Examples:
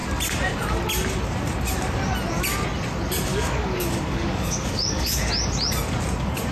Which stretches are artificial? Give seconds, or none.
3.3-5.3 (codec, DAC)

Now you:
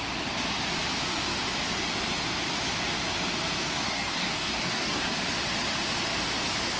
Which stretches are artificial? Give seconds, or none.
3.6-5.0 (codec, DAC)

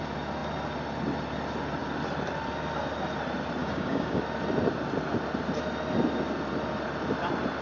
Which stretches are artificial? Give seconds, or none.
3.6-4.2 (codec, DAC)

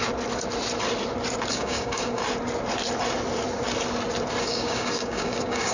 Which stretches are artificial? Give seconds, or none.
1.5-2.2 (codec, DAC); 4.4-5.7

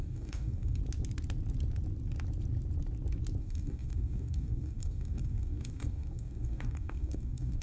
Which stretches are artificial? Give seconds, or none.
0.0-0.8 (codec, DAC); 3.4-7.6

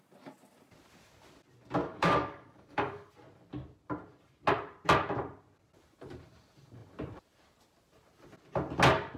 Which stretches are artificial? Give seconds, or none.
1.8-3.1 (codec, DAC)

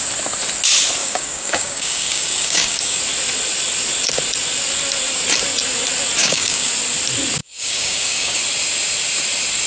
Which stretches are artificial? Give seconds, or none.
1.0-3.0 (codec, DAC); 6.2-6.7; 7.4-8.4